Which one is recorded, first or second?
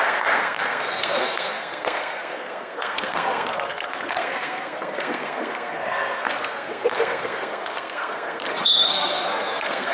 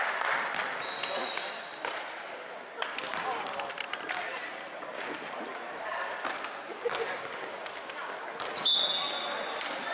second